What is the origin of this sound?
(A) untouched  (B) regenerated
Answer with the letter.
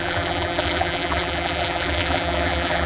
B